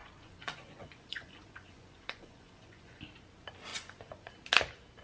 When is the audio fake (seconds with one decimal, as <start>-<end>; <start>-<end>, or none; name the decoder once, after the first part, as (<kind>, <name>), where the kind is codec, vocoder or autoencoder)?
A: 0.0-3.0 (vocoder, Vocos); 3.7-4.3